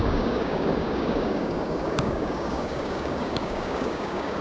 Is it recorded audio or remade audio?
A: remade